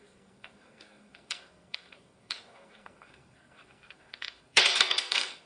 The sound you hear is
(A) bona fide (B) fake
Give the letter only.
B